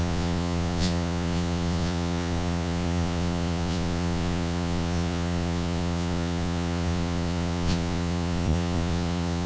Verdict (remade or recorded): remade